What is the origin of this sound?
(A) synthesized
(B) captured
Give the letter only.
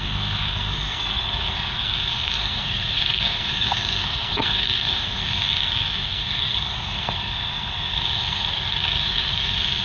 A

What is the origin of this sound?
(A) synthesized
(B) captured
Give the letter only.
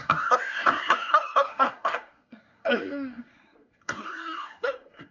A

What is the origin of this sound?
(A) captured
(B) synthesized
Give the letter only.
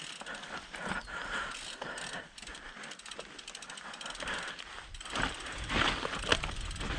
A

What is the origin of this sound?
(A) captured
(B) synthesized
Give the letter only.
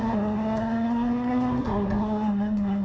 B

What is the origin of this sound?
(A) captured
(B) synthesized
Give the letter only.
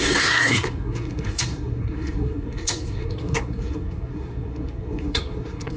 B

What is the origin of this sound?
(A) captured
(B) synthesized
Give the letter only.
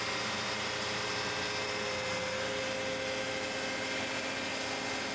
A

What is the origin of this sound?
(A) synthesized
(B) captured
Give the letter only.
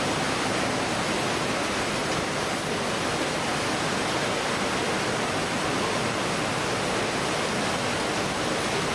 B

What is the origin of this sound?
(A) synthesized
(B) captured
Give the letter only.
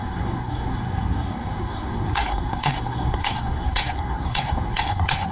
A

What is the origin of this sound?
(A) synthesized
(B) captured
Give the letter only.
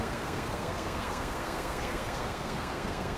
A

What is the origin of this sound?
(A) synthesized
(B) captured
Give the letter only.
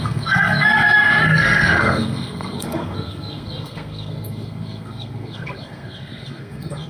A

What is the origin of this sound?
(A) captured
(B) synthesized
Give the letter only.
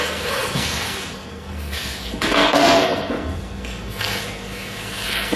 B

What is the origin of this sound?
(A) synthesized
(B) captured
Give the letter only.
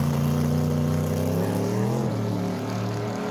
B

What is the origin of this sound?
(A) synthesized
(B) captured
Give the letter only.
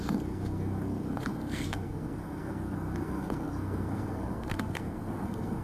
A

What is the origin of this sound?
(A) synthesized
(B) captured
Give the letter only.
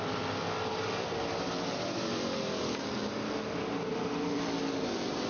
B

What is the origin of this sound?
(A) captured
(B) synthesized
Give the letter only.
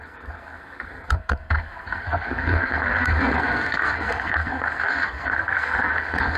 B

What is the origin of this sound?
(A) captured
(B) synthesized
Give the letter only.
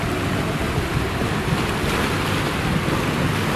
A